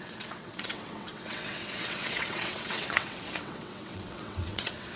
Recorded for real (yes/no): no